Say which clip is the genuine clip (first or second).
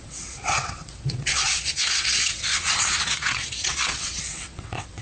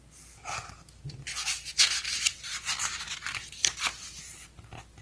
second